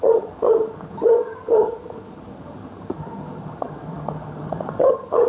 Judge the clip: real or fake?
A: fake